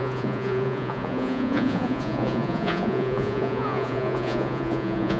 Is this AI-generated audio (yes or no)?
yes